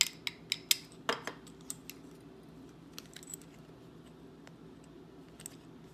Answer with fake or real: real